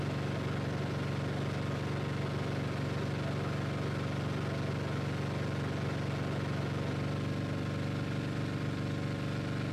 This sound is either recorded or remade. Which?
recorded